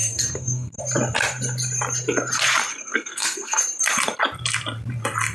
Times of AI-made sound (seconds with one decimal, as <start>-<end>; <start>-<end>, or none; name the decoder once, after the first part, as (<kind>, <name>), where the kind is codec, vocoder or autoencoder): 0.0-0.8 (codec, SNAC); 2.7-3.6